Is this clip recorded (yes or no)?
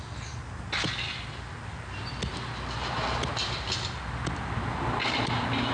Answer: yes